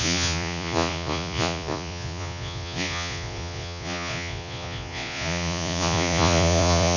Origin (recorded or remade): remade